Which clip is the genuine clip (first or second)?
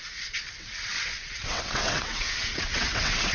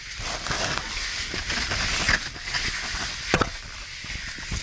second